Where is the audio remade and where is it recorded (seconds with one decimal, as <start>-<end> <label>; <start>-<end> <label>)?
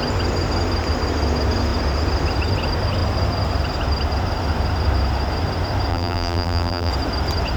0.0-5.9 recorded; 5.9-6.9 remade; 6.9-7.6 recorded